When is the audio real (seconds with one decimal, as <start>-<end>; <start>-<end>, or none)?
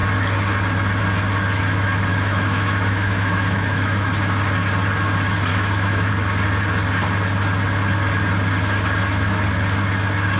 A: 0.0-2.1; 4.1-5.5; 6.1-10.4